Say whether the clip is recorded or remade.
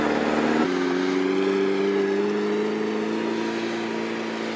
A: recorded